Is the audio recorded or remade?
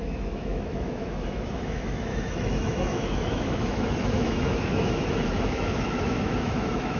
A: remade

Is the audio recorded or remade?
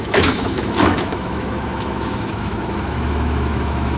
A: remade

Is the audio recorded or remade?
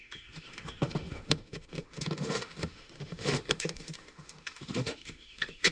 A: remade